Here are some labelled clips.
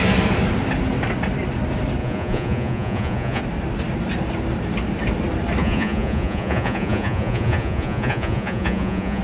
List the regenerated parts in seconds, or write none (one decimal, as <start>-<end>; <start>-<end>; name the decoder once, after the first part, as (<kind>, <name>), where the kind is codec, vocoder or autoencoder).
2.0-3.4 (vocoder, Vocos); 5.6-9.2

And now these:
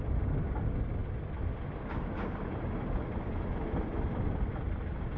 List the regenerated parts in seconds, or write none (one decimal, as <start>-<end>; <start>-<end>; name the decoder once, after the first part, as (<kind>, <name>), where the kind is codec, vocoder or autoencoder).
none

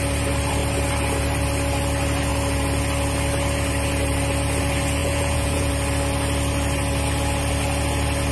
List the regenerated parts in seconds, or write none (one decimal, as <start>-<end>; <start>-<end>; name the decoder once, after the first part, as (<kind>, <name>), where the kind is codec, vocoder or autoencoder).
5.0-5.7 (vocoder, Vocos)

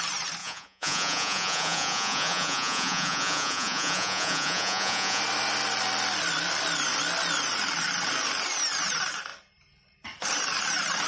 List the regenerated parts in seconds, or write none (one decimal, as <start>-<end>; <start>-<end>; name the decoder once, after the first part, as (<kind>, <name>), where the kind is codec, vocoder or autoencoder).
0.4-5.2 (vocoder, Vocos)

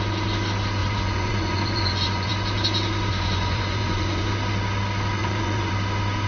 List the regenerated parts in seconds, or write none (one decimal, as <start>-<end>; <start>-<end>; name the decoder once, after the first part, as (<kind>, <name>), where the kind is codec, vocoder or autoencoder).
0.8-2.3 (vocoder, Vocos); 3.1-4.2; 5.2-5.7

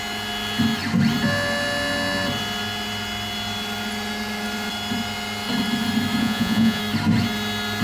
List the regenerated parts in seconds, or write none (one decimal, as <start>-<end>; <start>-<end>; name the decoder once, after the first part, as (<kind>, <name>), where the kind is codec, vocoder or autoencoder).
6.2-6.8 (vocoder, Vocos)

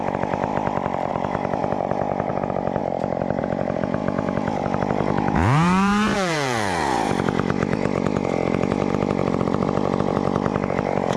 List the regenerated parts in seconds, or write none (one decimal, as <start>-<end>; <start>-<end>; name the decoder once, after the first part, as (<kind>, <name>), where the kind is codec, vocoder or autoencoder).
0.0-0.5 (vocoder, Vocos); 1.1-2.8; 3.4-11.2